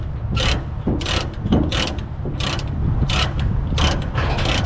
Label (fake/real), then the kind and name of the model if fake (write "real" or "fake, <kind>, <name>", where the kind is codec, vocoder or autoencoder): real